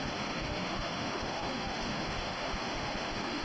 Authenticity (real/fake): fake